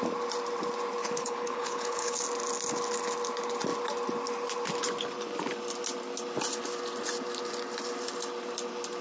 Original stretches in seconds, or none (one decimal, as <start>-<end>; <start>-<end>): 0.0-1.0; 2.2-9.0